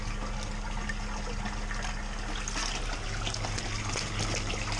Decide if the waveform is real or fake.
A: real